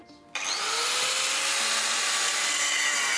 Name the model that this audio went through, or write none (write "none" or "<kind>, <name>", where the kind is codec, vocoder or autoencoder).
none